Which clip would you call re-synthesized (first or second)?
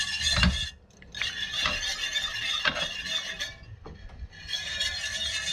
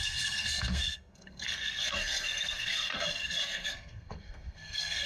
second